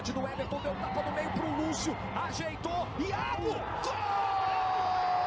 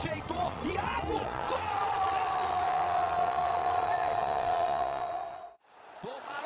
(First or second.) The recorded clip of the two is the first